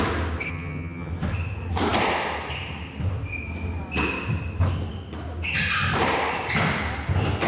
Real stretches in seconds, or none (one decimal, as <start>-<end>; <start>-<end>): 0.0-0.5; 1.1-7.5